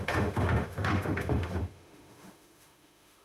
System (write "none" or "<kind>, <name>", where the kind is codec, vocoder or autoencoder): autoencoder, DAC-VAE